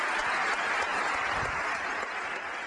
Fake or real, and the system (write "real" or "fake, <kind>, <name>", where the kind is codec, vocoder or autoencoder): fake, vocoder, BigVGAN v2